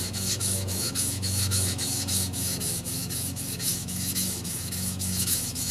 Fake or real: fake